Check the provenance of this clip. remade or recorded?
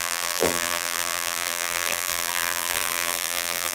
remade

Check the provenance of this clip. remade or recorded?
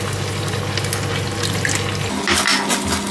recorded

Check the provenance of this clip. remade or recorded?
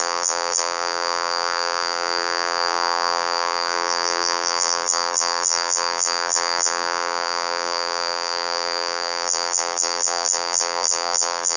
remade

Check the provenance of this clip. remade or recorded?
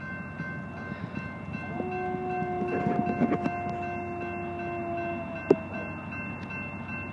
recorded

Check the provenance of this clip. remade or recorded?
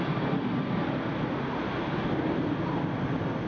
recorded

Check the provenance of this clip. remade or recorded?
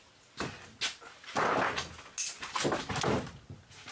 recorded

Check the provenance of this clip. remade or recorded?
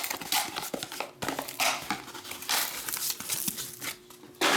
recorded